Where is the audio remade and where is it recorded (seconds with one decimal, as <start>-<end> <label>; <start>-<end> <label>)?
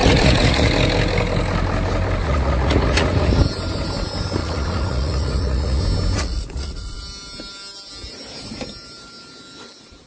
0.0-0.7 remade; 0.7-2.2 recorded; 2.2-3.4 remade; 3.4-4.4 recorded; 4.4-5.8 remade; 5.8-6.2 recorded; 6.2-7.0 remade; 7.0-10.1 recorded